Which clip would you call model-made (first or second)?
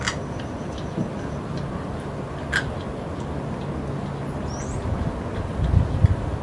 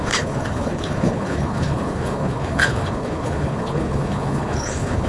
second